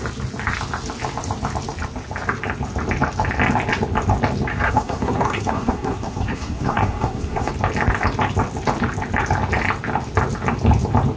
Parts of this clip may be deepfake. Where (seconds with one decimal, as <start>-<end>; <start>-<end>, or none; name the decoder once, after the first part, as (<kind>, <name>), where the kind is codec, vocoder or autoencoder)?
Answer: 4.5-7.5 (codec, SNAC)

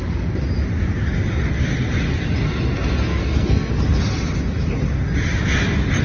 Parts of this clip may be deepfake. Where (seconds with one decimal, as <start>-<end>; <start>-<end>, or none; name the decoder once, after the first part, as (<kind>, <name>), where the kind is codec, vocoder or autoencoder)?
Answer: 3.1-3.7 (codec, SNAC)

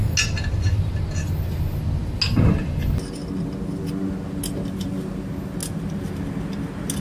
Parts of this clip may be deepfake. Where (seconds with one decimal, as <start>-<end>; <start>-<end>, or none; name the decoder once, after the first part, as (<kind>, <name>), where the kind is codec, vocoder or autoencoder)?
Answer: none